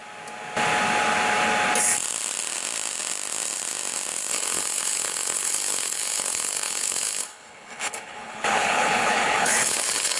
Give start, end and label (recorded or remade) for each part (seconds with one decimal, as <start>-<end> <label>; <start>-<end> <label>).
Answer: 0.0-4.3 recorded; 4.3-10.2 remade